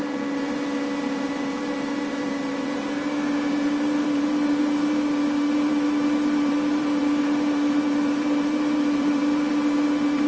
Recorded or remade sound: remade